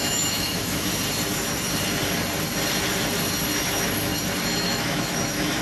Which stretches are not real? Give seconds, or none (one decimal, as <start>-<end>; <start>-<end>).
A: 0.0-0.9; 3.6-4.1; 4.6-5.6